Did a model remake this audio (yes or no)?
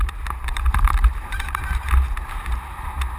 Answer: yes